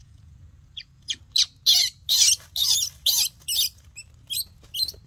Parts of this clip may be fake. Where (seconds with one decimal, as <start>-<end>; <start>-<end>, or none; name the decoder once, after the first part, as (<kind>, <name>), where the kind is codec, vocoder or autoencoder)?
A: 0.0-1.2 (vocoder, Vocos)